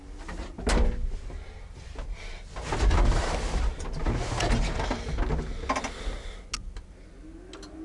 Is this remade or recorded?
recorded